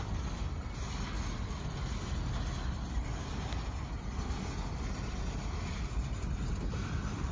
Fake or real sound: real